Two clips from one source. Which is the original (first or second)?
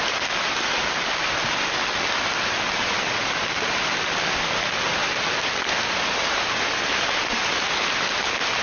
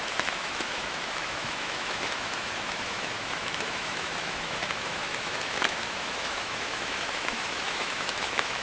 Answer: first